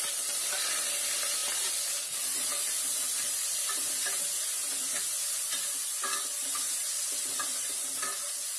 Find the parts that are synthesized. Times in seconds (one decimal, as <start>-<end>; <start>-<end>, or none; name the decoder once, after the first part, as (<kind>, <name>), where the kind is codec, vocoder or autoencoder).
none